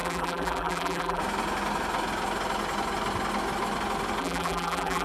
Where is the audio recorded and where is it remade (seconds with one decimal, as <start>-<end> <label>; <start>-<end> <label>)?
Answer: 0.0-1.2 remade; 1.2-4.2 recorded; 4.2-5.0 remade